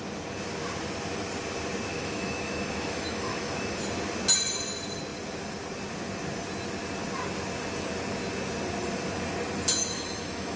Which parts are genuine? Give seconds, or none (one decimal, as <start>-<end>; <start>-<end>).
0.0-1.9; 3.8-9.8